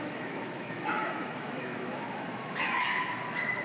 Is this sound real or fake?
fake